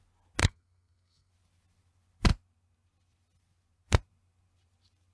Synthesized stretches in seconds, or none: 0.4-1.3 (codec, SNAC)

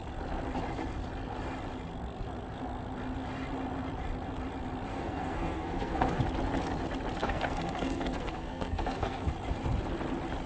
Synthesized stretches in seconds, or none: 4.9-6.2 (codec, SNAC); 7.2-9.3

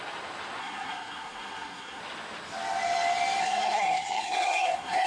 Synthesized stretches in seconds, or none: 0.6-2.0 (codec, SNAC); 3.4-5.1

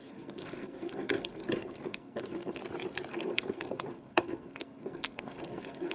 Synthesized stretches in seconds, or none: 0.0-2.6 (codec, SNAC); 3.1-5.9

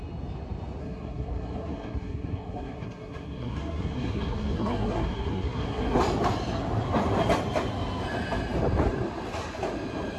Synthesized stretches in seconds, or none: 0.8-6.0 (codec, SNAC)

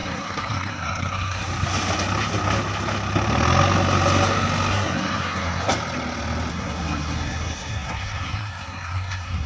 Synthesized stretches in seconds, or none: 0.0-1.5 (codec, SNAC); 4.7-5.7; 6.5-9.5